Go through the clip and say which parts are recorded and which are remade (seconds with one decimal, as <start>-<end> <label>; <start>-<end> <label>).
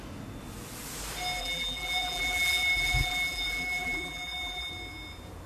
0.0-1.4 recorded; 1.4-4.7 remade; 4.7-5.5 recorded